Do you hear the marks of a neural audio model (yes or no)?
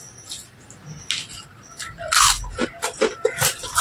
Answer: no